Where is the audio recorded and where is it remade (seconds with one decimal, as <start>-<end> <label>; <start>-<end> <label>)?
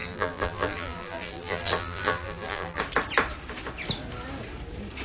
0.0-2.8 remade; 2.8-5.0 recorded